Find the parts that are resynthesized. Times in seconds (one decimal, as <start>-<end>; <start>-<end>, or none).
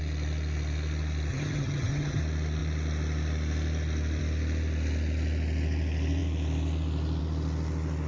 1.3-2.2